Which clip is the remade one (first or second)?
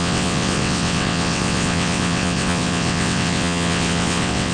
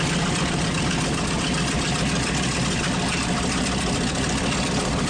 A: first